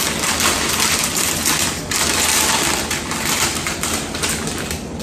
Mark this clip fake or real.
real